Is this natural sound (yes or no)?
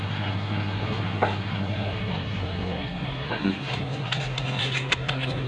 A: no